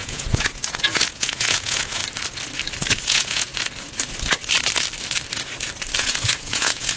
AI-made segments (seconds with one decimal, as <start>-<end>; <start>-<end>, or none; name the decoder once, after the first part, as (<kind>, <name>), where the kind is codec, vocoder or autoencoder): 0.0-2.0 (vocoder, Vocos); 2.8-3.5; 6.0-7.0